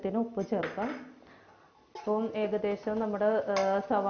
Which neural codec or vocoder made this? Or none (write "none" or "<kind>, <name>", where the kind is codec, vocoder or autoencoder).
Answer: none